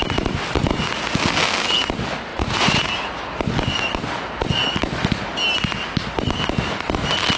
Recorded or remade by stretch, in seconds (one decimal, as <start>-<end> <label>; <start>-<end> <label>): 0.0-2.3 recorded; 2.3-3.1 remade; 3.1-7.4 recorded